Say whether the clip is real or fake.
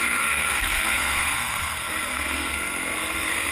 fake